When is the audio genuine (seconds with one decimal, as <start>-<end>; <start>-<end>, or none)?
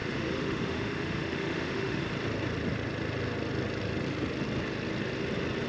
2.0-5.7